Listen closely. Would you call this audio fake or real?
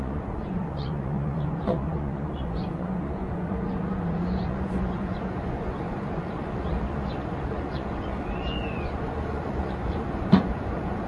fake